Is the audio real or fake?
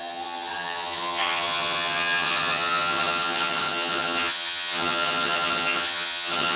fake